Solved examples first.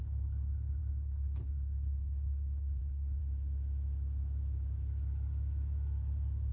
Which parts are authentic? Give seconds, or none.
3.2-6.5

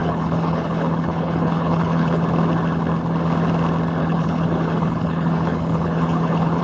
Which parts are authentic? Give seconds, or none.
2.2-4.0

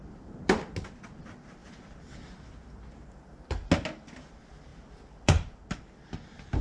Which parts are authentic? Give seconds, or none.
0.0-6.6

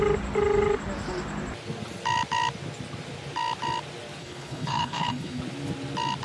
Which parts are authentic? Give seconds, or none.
0.0-4.2; 5.4-6.2